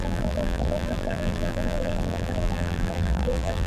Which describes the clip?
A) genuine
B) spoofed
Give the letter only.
B